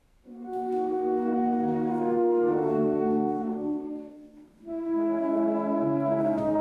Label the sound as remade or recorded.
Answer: remade